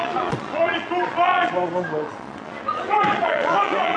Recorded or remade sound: remade